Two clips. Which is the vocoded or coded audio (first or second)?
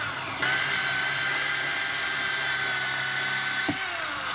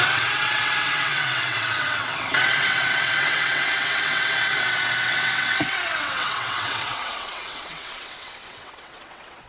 second